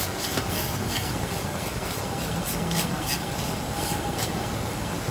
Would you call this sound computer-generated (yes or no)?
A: yes